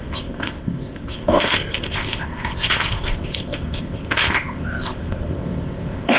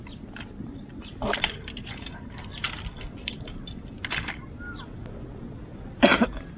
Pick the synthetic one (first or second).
first